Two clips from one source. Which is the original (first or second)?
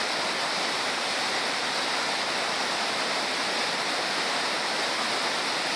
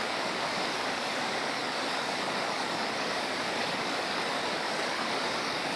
first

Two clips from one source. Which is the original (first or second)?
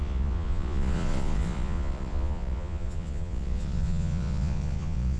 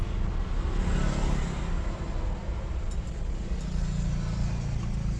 second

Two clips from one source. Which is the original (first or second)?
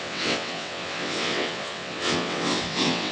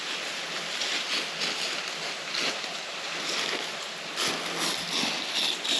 second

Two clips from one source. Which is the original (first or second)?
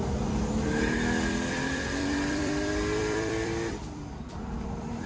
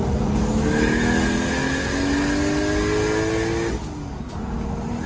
second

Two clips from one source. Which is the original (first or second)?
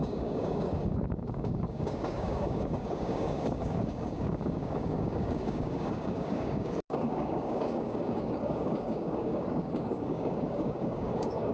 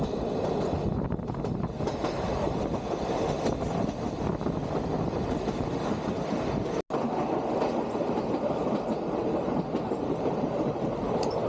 second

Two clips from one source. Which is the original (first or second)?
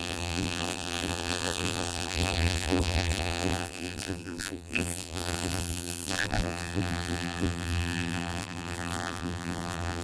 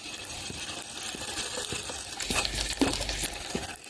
second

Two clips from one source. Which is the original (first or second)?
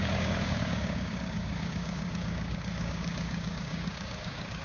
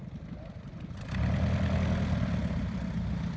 second